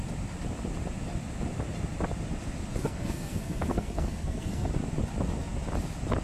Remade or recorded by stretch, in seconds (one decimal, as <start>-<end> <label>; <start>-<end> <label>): 0.0-2.7 recorded; 2.7-4.7 remade; 4.7-6.2 recorded